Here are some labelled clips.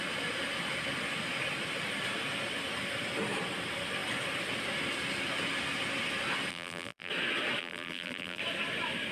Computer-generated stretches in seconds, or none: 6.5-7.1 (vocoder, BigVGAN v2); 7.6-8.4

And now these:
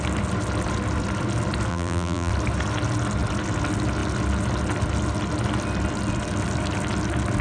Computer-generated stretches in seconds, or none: 1.7-2.3 (vocoder, BigVGAN v2)